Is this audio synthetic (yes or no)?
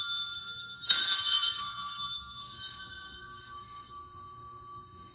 yes